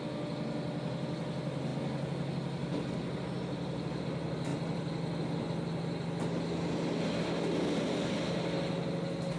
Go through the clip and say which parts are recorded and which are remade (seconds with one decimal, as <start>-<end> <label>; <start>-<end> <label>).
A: 0.0-9.4 recorded

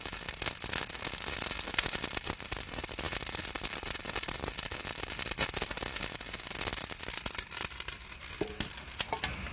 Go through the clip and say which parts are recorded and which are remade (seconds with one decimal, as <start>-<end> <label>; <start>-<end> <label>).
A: 0.0-9.5 recorded

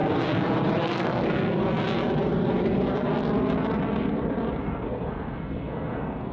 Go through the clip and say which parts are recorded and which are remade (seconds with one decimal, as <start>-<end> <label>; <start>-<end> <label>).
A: 0.0-0.8 recorded; 0.8-1.6 remade; 1.6-4.6 recorded; 4.6-6.3 remade

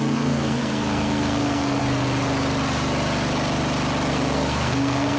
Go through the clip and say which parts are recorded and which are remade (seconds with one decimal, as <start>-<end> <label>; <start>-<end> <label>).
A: 0.0-1.8 remade; 1.8-4.1 recorded; 4.1-5.2 remade

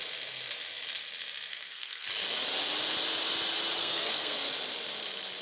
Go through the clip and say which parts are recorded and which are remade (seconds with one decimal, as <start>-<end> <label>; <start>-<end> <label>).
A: 0.0-1.5 recorded; 1.5-2.1 remade; 2.1-3.8 recorded; 3.8-4.5 remade; 4.5-5.4 recorded